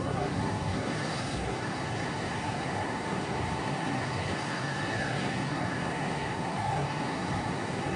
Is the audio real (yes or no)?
no